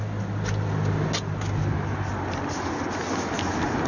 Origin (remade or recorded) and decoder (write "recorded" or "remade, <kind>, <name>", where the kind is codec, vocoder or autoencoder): recorded